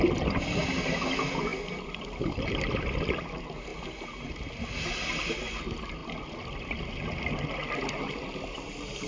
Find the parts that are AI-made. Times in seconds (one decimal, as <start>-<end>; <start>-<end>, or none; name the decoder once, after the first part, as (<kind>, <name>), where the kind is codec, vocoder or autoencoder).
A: none